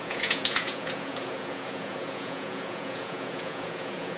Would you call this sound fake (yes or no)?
yes